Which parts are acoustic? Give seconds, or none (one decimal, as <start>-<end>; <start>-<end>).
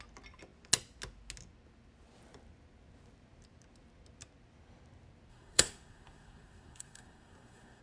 0.0-5.3